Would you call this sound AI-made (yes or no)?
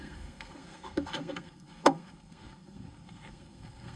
yes